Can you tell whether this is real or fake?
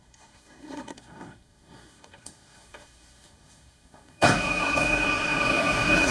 fake